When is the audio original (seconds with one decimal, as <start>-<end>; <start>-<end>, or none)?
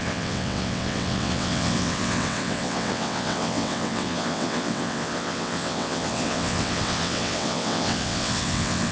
none